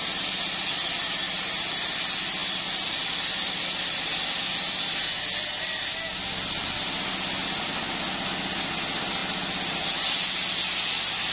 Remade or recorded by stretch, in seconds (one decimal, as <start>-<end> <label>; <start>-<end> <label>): 0.0-11.3 recorded

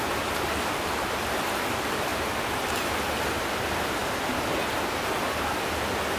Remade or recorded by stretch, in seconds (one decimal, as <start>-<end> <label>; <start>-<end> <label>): 0.0-2.1 recorded; 2.1-2.9 remade; 2.9-6.2 recorded

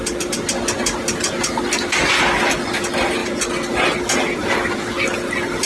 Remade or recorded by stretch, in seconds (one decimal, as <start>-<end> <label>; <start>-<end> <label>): 0.0-5.7 recorded

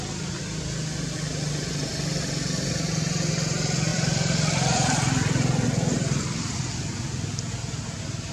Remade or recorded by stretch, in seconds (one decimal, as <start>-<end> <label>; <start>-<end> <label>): 0.0-3.9 recorded; 3.9-8.3 remade

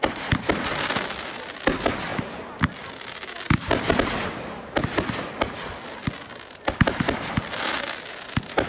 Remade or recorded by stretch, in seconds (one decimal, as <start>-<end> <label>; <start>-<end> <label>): 0.0-8.7 recorded

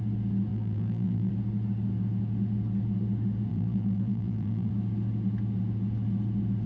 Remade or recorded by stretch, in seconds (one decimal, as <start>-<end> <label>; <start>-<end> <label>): 0.0-0.5 recorded; 0.5-1.3 remade; 1.3-3.5 recorded; 3.5-4.7 remade; 4.7-6.7 recorded

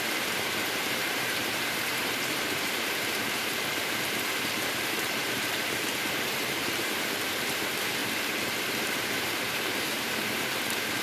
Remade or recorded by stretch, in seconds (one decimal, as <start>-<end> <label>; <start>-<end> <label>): 0.0-8.0 remade; 8.0-8.6 recorded; 8.6-11.0 remade

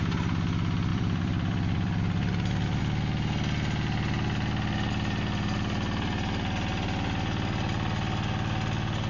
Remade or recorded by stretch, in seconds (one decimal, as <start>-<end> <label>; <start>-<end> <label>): 0.0-0.9 recorded; 0.9-2.8 remade; 2.8-9.1 recorded